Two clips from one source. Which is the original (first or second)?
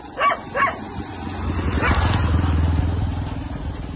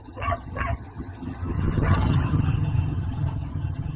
first